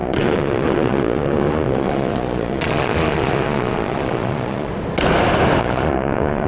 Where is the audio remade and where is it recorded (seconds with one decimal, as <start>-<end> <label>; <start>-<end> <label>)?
0.0-4.7 remade; 4.7-5.6 recorded; 5.6-6.5 remade